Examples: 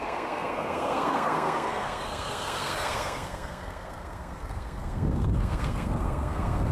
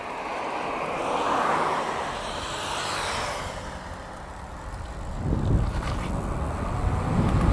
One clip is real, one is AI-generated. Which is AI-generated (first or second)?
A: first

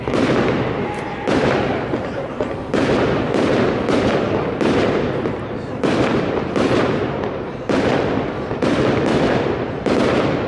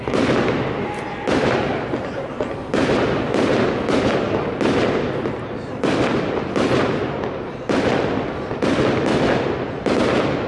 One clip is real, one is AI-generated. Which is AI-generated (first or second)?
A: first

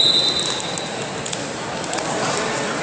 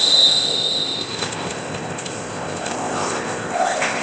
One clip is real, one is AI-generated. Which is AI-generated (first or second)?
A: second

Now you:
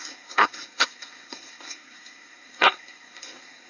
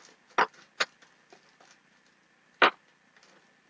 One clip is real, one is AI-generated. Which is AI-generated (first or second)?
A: first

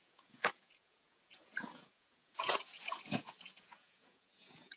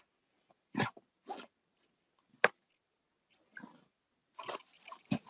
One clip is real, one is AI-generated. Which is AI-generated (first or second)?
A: first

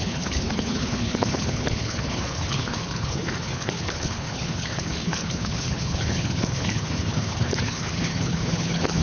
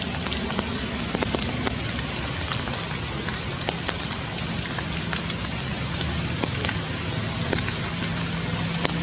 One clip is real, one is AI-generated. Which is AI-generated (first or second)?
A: first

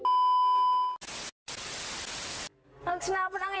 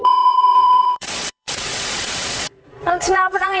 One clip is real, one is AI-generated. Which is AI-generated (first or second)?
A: second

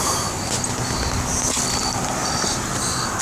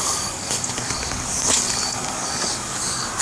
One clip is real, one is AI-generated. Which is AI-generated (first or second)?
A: second